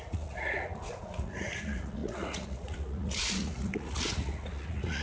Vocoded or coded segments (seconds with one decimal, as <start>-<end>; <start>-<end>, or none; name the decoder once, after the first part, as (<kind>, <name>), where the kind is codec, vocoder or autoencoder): 0.0-5.0 (vocoder, Vocos)